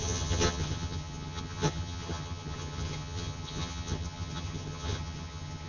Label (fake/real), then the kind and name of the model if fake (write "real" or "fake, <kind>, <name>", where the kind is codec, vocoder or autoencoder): fake, vocoder, HiFi-GAN